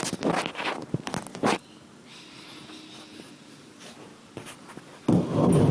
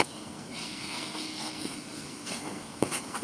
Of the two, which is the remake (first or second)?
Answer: second